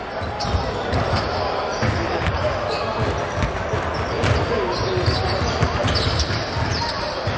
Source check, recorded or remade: recorded